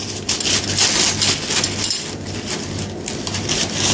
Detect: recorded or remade recorded